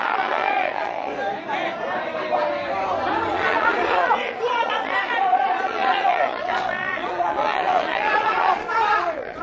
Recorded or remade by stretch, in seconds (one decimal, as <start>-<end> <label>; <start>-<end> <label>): 0.0-1.1 remade; 1.1-3.3 recorded; 3.3-9.4 remade